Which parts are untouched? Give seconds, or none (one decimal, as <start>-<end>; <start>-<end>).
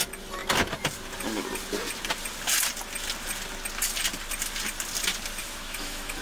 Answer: 0.0-5.4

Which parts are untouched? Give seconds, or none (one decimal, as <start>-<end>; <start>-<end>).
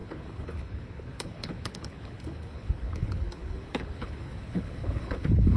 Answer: none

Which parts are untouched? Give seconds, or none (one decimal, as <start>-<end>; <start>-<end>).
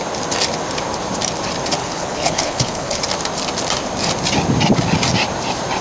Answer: 0.0-1.8; 3.0-5.8